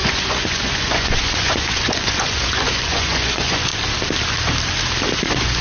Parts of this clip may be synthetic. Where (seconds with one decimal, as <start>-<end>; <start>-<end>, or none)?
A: 0.0-3.7; 5.1-5.6